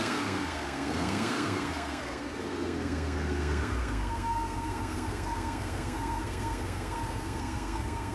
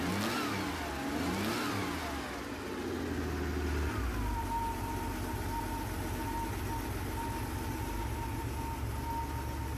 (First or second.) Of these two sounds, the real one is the second